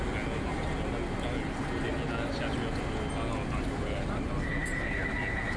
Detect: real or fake real